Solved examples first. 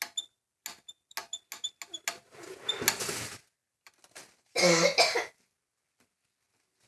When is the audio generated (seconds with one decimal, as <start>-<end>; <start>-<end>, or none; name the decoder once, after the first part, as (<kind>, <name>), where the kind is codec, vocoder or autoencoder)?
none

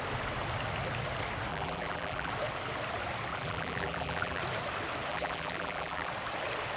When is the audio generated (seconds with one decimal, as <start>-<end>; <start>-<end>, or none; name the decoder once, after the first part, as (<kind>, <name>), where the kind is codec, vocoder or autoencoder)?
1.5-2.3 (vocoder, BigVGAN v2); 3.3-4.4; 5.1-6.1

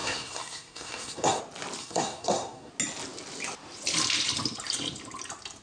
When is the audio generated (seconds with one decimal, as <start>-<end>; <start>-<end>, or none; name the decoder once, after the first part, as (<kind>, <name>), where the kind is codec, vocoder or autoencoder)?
0.0-1.4 (codec, SNAC); 1.8-2.7

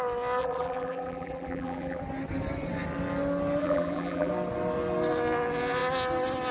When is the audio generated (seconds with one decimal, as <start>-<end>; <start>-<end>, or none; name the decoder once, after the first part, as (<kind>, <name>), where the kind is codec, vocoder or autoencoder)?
0.4-2.0 (vocoder, BigVGAN v2); 3.6-4.3

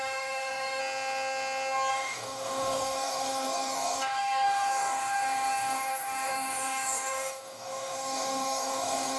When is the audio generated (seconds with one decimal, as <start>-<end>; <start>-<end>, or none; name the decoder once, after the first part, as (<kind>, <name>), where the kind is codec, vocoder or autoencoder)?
0.0-0.8 (codec, DAC); 1.9-9.2

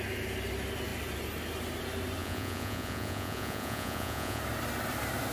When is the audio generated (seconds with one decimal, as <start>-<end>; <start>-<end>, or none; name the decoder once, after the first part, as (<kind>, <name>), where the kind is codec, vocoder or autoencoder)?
2.2-4.4 (vocoder, Vocos)

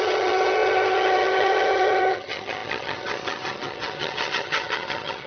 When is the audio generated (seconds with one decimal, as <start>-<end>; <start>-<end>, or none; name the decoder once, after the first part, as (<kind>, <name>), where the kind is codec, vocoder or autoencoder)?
0.0-5.3 (vocoder, HiFi-GAN)

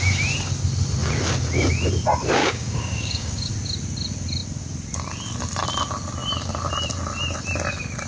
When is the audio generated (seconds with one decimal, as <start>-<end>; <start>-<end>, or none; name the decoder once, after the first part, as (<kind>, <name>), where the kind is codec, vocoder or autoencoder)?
2.4-3.5 (codec, DAC)